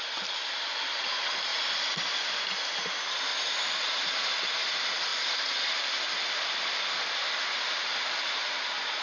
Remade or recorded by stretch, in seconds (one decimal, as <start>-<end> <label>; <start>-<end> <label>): 0.0-1.5 recorded; 1.5-2.4 remade; 2.4-5.1 recorded; 5.1-7.7 remade; 7.7-9.0 recorded